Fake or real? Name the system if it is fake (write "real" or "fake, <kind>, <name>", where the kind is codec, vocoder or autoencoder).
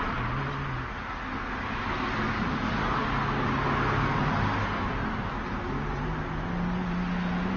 real